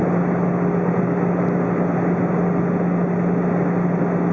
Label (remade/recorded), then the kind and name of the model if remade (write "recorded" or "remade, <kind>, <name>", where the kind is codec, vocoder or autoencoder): recorded